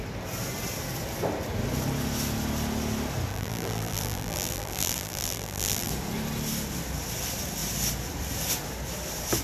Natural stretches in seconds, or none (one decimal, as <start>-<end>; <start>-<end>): 0.0-3.3; 5.9-9.4